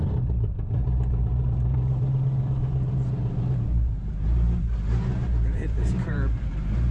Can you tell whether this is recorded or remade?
remade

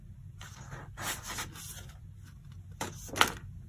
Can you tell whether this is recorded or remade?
recorded